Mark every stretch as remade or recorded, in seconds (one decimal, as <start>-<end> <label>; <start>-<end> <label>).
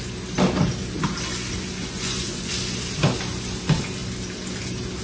0.0-1.8 recorded; 1.8-2.5 remade; 2.5-5.0 recorded